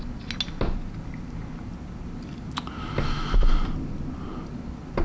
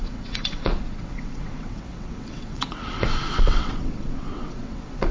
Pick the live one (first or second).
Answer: first